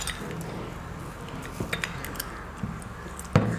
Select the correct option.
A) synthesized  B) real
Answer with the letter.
B